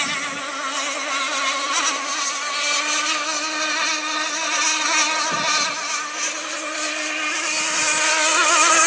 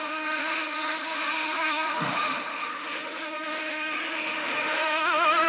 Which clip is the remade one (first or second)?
second